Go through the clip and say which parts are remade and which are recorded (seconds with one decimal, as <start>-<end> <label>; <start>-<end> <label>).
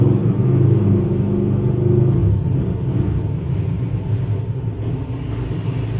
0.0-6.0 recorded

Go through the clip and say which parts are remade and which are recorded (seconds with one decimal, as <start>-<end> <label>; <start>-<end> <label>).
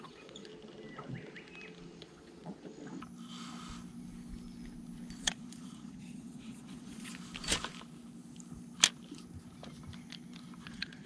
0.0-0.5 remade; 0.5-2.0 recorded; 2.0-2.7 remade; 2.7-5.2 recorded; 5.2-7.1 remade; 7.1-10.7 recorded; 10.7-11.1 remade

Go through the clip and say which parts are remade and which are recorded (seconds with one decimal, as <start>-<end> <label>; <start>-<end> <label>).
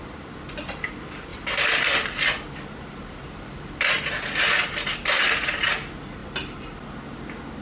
0.0-1.3 recorded; 1.3-4.4 remade; 4.4-7.6 recorded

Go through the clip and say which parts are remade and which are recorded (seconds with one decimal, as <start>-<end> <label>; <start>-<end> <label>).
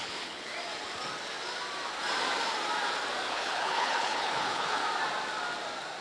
0.0-0.5 remade; 0.5-3.3 recorded; 3.3-4.8 remade; 4.8-6.0 recorded